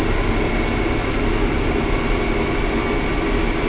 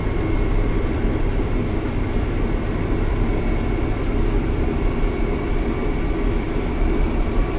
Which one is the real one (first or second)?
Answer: first